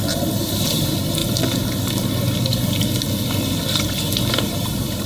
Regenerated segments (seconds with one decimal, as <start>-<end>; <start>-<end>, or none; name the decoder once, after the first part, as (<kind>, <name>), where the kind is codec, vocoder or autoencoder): 0.0-1.2 (vocoder, BigVGAN v2); 4.3-5.1